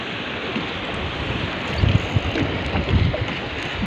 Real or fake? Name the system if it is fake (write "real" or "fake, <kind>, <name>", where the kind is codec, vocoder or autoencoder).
real